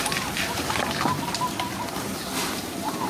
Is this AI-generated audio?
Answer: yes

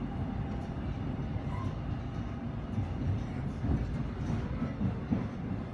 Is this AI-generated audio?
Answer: no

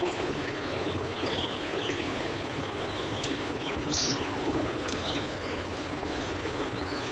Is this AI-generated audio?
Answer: yes